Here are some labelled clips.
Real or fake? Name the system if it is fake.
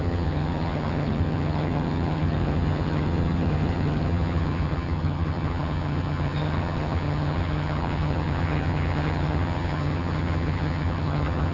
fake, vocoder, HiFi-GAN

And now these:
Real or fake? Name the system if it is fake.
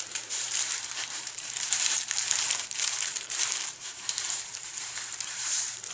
fake, vocoder, BigVGAN v2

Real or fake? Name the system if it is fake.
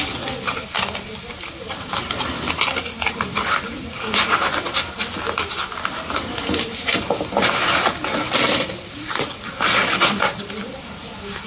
real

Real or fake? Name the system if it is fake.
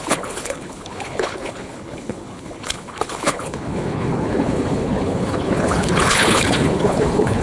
fake, codec, HILCodec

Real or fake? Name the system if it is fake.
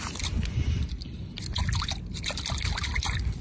real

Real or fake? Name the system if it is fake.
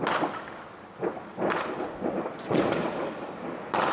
real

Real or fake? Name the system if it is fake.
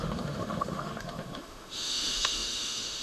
fake, autoencoder, DAC-VAE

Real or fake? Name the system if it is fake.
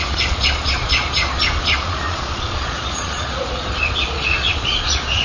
fake, vocoder, Vocos